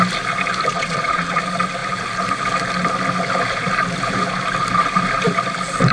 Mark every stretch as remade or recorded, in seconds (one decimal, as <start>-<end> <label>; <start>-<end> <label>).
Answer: 0.0-0.7 recorded; 0.7-1.4 remade; 1.4-5.9 recorded